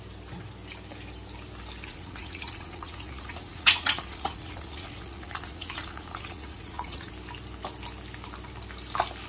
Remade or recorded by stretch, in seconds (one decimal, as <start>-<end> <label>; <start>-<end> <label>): 0.0-1.9 recorded; 1.9-7.1 remade; 7.1-9.3 recorded